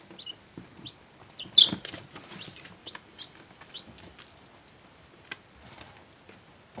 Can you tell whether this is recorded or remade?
recorded